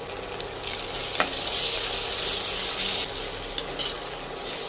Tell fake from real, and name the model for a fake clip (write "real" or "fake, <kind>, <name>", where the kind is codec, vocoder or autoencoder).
real